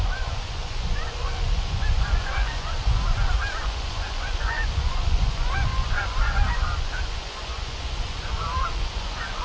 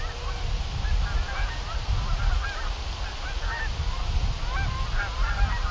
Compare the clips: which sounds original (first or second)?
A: second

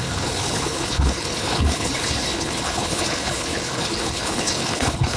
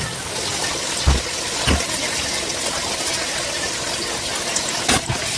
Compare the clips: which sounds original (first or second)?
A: second